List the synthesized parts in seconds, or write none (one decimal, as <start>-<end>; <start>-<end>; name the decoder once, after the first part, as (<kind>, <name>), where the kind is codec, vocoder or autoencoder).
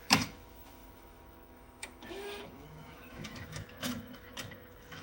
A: 0.0-5.0 (autoencoder, DAC-VAE)